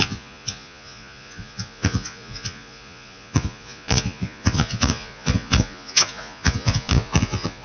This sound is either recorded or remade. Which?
remade